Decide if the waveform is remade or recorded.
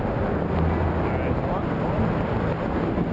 recorded